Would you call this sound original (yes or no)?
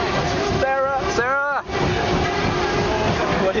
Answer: yes